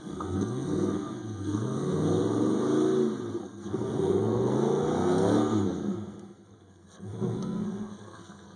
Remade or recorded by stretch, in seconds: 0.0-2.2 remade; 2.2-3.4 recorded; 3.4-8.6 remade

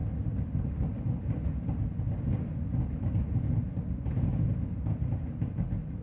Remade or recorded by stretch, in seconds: 0.0-6.0 recorded

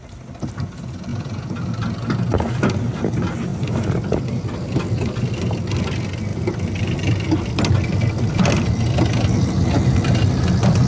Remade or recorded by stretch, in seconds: 0.0-1.1 recorded; 1.1-1.6 remade; 1.6-10.9 recorded